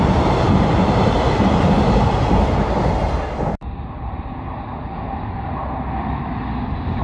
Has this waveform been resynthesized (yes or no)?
no